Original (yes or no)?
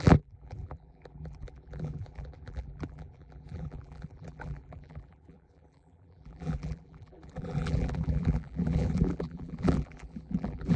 no